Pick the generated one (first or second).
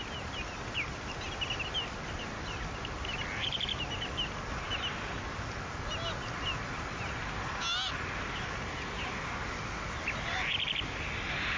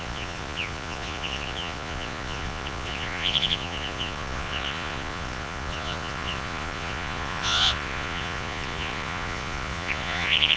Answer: second